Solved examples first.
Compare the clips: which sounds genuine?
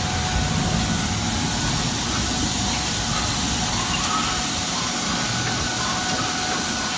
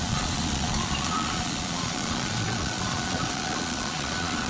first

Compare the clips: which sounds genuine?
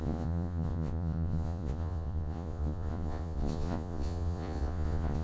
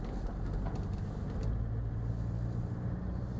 second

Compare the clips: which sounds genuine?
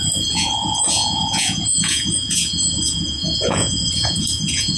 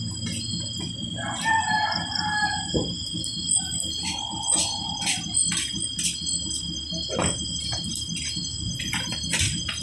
second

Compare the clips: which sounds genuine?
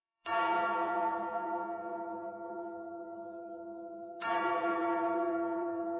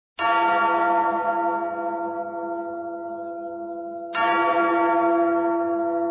second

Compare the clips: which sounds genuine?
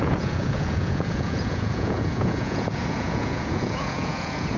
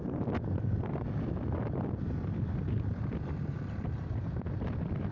second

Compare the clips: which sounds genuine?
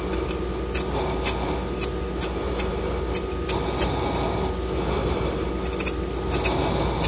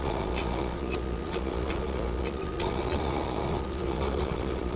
first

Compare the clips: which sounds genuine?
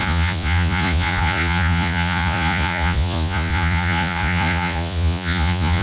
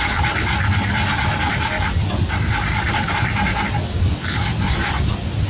second